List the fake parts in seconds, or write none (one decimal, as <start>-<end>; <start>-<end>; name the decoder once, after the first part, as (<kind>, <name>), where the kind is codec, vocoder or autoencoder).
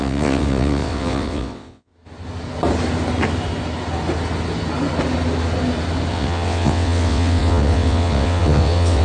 0.0-1.9 (vocoder, WaveNeXt); 6.1-9.0